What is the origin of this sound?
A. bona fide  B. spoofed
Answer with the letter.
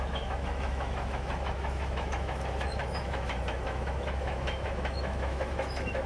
B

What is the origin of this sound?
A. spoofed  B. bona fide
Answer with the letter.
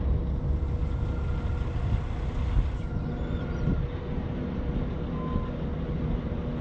B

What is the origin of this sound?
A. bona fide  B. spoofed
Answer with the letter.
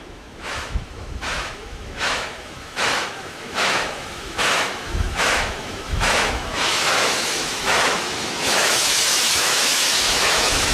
B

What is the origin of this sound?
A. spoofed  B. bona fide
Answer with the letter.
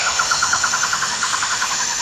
A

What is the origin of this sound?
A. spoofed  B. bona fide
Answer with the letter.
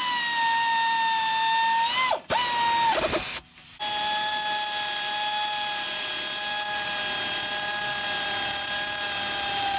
B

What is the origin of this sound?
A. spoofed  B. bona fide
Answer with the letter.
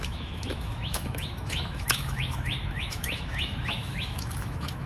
A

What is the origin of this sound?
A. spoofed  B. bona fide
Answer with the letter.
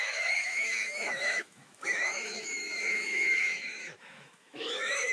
A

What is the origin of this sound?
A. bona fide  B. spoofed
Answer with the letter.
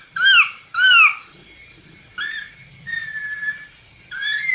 A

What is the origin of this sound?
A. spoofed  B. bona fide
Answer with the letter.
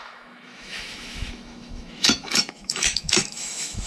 A